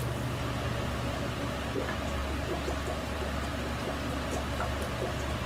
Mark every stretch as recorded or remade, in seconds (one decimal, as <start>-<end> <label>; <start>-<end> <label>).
0.0-5.5 recorded